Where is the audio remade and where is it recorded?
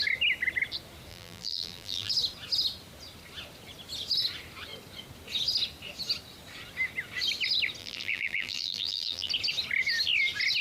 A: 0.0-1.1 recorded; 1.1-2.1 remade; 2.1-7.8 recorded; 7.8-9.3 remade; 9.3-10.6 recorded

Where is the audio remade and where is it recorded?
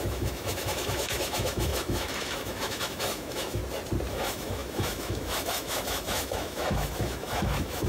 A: 0.0-3.6 remade; 3.6-4.1 recorded; 4.1-7.9 remade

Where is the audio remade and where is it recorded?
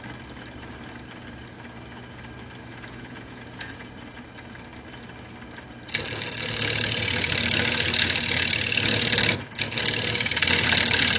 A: 0.0-2.7 recorded; 2.7-3.9 remade; 3.9-11.2 recorded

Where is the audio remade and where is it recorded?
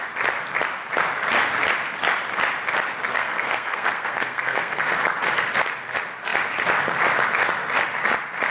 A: 0.0-3.1 recorded; 3.1-4.8 remade; 4.8-8.5 recorded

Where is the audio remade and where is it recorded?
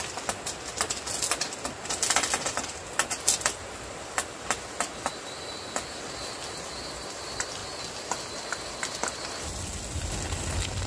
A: 0.0-10.9 recorded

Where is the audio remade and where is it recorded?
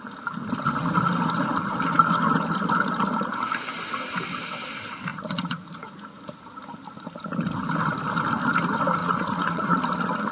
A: 0.0-5.1 recorded; 5.1-6.2 remade; 6.2-9.0 recorded; 9.0-9.8 remade; 9.8-10.3 recorded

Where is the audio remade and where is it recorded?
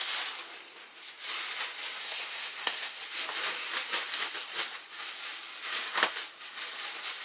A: 0.0-2.0 recorded; 2.0-3.0 remade; 3.0-7.2 recorded